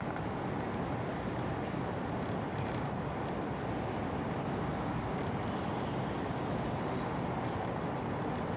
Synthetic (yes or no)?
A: no